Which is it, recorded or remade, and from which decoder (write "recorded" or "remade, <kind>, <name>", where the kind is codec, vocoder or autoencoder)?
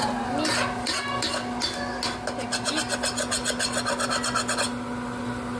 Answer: recorded